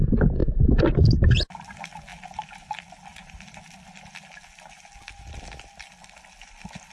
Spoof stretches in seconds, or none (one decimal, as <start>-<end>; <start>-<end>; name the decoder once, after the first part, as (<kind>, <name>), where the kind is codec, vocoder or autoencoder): 0.4-0.9 (vocoder, Vocos)